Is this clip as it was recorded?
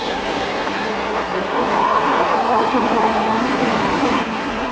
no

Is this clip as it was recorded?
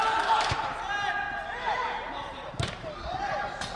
yes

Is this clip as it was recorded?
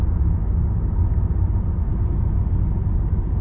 yes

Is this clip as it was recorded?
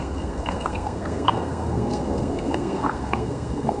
no